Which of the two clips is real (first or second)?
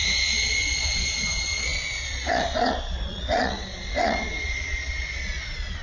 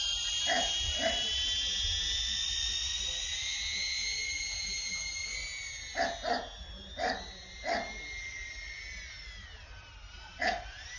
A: second